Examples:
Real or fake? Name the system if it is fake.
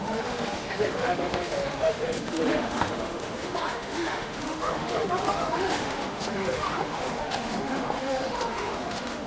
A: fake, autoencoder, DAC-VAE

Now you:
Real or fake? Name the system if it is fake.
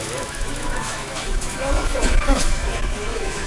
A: fake, autoencoder, DAC-VAE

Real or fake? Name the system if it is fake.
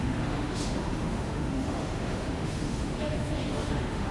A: fake, autoencoder, DAC-VAE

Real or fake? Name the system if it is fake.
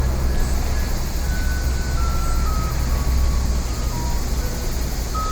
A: real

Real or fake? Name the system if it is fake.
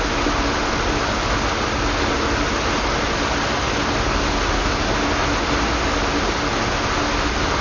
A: real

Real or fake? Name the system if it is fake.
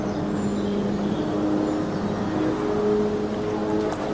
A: real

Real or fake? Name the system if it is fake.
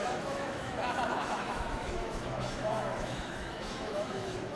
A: fake, autoencoder, DAC-VAE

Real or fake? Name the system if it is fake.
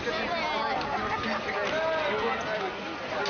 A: real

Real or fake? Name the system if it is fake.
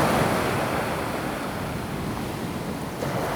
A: real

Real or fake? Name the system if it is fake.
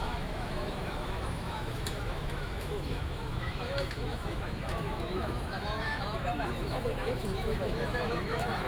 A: fake, autoencoder, DAC-VAE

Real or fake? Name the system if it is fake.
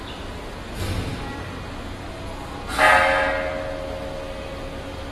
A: real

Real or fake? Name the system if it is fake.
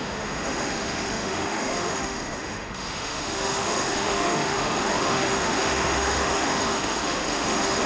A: fake, autoencoder, DAC-VAE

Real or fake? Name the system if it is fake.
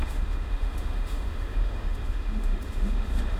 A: fake, autoencoder, DAC-VAE